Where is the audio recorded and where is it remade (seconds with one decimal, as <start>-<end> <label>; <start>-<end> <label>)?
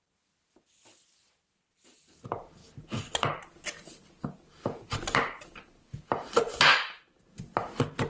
0.0-8.1 recorded